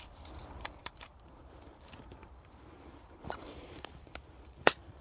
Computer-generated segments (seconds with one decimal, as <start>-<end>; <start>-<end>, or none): 0.0-5.0